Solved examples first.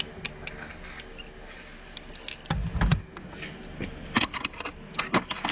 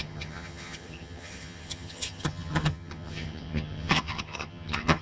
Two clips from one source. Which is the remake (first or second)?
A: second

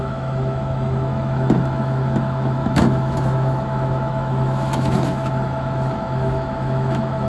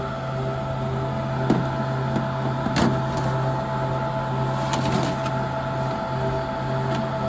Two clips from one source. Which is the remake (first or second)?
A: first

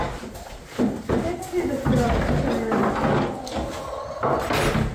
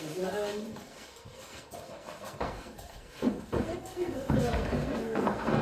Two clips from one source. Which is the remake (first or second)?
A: second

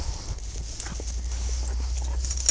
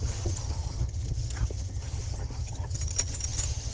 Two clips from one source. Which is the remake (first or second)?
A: second